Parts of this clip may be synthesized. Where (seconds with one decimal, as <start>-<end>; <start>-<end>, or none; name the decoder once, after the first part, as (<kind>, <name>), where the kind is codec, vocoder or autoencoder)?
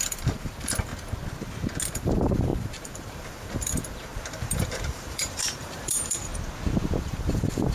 0.0-0.9 (vocoder, BigVGAN v2); 1.9-6.3; 7.0-7.7